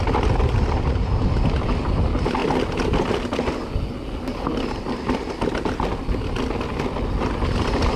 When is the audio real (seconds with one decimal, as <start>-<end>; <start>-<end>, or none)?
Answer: 0.0-8.0